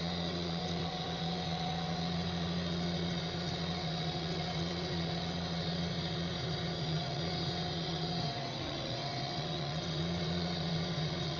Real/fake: fake